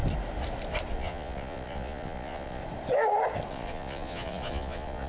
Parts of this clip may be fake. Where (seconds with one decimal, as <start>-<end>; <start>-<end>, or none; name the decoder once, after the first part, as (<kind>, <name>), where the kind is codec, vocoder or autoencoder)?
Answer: 0.9-2.6 (vocoder, Vocos); 3.5-5.1